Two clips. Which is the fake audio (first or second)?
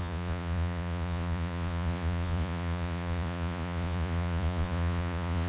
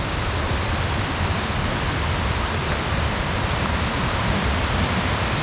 first